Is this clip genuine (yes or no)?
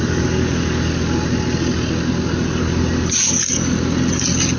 yes